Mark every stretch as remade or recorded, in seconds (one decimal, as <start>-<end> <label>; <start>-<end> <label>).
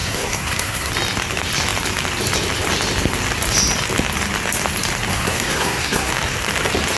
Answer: 0.0-0.9 remade; 0.9-5.1 recorded; 5.1-6.1 remade; 6.1-7.0 recorded